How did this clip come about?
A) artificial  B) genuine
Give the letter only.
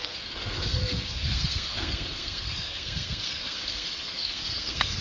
A